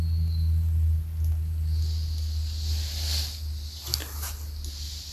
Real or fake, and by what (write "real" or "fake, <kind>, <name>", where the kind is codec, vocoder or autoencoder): real